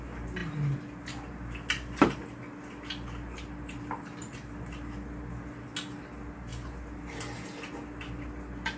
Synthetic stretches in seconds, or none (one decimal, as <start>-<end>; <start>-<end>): none